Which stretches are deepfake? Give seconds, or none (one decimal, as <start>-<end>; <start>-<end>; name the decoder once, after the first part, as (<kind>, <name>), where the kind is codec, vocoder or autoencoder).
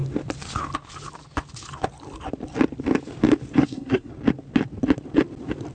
3.6-4.1 (codec, SNAC)